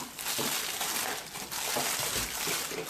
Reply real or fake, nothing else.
real